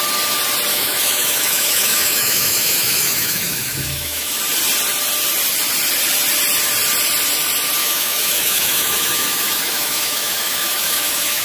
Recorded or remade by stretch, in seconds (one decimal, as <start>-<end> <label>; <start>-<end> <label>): 0.0-0.7 recorded; 0.7-4.4 remade; 4.4-7.8 recorded; 7.8-11.4 remade